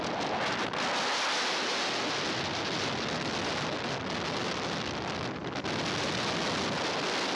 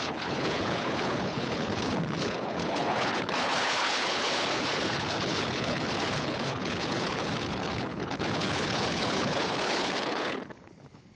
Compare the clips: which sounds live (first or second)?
first